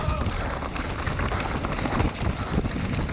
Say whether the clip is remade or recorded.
recorded